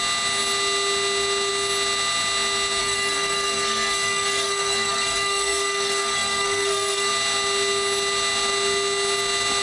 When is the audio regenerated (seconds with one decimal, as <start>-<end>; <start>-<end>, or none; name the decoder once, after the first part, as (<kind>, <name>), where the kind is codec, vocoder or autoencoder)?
2.8-7.1 (codec, SNAC)